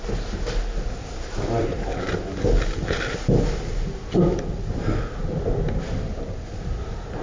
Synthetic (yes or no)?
no